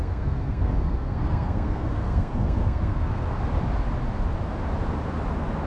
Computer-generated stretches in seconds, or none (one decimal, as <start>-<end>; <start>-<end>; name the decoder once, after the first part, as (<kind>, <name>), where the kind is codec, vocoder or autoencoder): 0.0-3.4 (codec, SNAC)